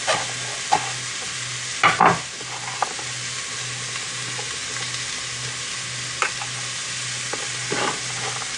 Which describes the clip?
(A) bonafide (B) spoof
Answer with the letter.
A